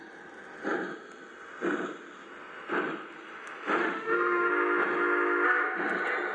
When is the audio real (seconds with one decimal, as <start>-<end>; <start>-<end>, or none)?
0.0-3.8; 4.5-6.3